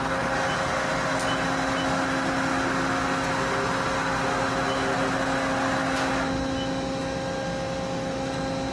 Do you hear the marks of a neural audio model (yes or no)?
no